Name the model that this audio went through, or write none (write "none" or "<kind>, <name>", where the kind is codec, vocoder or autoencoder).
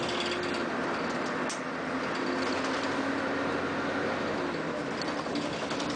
none